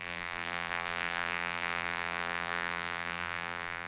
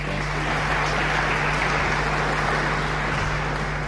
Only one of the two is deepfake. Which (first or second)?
first